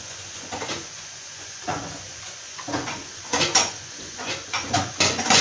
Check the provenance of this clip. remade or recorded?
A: remade